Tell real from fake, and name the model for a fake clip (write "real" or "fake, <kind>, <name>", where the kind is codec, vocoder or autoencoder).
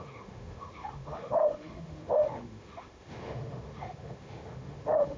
fake, autoencoder, DAC-VAE